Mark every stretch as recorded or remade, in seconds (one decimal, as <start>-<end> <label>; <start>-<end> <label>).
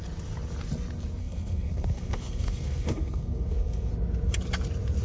0.0-1.2 recorded; 1.2-3.9 remade; 3.9-5.0 recorded